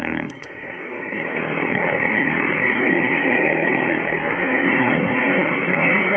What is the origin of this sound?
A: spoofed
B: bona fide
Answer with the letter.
A